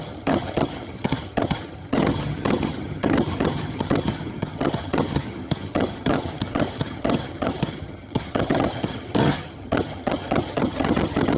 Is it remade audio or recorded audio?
remade